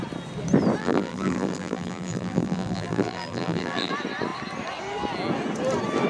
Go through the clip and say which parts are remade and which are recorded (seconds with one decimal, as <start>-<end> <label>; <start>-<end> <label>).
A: 0.0-0.8 recorded; 0.8-3.9 remade; 3.9-6.1 recorded